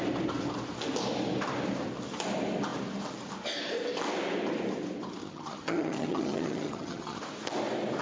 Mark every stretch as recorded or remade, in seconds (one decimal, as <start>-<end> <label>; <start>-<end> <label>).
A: 0.0-5.2 recorded; 5.2-7.2 remade; 7.2-8.0 recorded